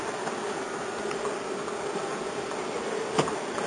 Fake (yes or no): no